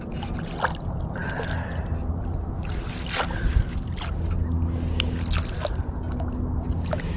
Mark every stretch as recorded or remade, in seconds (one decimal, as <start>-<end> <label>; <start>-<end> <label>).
0.0-7.2 recorded